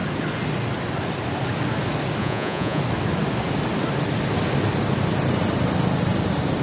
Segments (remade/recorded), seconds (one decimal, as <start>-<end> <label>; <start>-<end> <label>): 0.0-2.2 recorded; 2.2-2.8 remade; 2.8-6.6 recorded